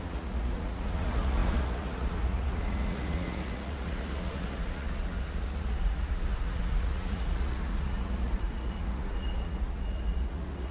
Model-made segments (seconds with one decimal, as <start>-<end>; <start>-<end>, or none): 0.0-10.7